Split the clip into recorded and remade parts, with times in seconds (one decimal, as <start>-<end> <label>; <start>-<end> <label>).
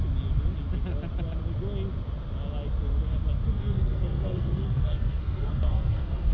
0.0-3.5 recorded; 3.5-6.3 remade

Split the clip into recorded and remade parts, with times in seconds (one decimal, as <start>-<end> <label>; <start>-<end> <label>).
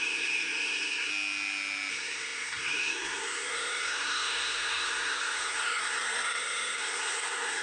0.0-1.1 remade; 1.1-1.9 recorded; 1.9-7.6 remade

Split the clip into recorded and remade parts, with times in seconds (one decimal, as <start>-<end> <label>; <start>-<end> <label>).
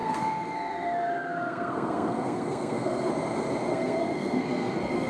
0.0-3.1 remade; 3.1-3.7 recorded; 3.7-5.1 remade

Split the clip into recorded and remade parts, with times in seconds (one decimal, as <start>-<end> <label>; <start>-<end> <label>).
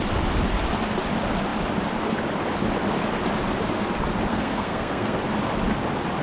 0.0-4.3 recorded; 4.3-5.2 remade; 5.2-6.2 recorded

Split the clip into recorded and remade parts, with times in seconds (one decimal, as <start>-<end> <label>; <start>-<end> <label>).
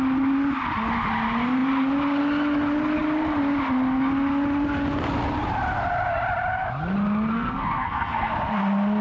0.0-7.3 recorded; 7.3-8.3 remade; 8.3-9.0 recorded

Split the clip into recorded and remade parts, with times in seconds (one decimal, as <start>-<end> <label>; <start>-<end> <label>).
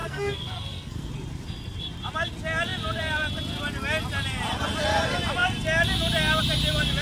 0.0-1.1 remade; 1.1-7.0 recorded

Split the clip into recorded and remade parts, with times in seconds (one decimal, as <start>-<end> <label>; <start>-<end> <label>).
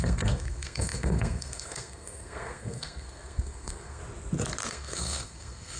0.0-4.0 remade; 4.0-4.7 recorded; 4.7-5.8 remade